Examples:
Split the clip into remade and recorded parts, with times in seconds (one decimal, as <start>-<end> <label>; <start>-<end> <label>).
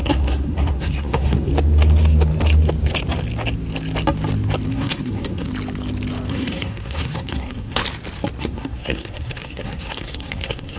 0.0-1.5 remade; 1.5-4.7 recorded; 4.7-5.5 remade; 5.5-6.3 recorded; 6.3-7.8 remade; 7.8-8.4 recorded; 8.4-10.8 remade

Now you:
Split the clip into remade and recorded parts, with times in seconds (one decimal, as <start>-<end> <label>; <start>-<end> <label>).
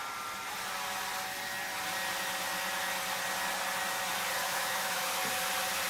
0.0-4.4 recorded; 4.4-5.2 remade; 5.2-5.9 recorded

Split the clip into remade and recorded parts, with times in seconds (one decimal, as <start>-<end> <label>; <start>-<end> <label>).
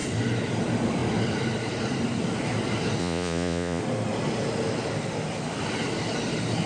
0.0-3.0 recorded; 3.0-3.8 remade; 3.8-6.7 recorded